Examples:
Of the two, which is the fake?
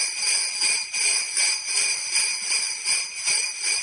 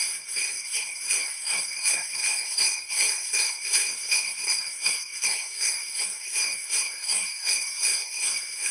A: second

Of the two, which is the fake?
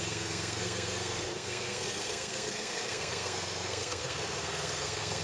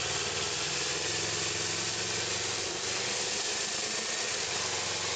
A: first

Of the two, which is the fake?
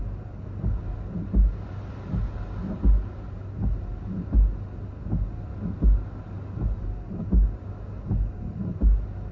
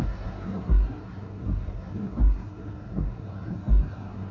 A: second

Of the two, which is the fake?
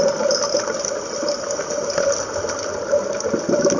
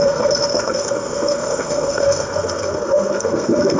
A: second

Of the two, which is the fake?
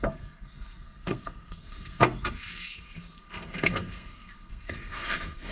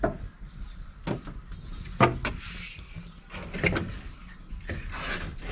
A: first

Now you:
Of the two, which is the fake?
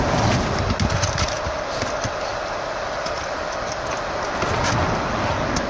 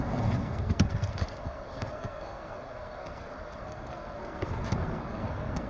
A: second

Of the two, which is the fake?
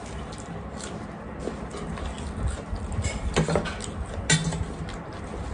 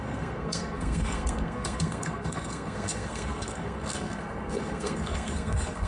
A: second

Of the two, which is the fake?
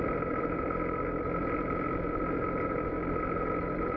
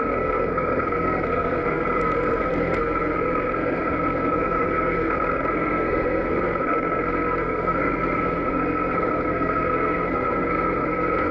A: second